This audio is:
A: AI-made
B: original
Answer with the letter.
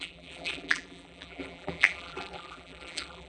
A